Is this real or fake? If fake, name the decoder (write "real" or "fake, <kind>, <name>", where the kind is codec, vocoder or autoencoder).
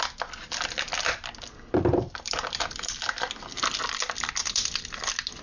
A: real